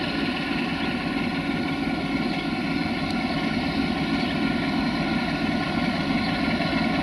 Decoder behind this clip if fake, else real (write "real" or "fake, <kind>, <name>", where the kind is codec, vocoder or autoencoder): real